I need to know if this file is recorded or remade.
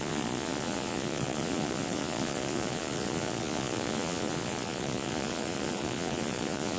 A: remade